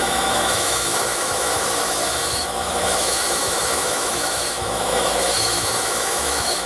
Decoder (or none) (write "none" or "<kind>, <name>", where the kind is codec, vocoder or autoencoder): autoencoder, DAC-VAE